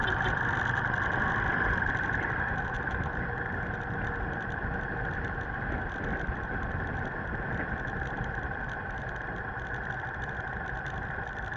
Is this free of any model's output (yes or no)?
no